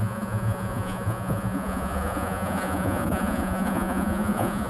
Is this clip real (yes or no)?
no